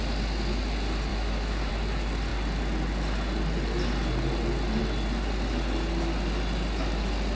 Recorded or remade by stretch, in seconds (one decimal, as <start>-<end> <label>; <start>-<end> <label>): 0.0-1.1 recorded; 1.1-1.7 remade; 1.7-7.3 recorded